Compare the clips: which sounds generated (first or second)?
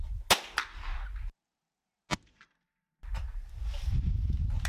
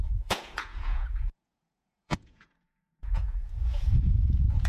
second